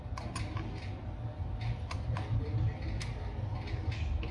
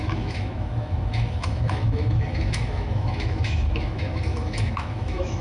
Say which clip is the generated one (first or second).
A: second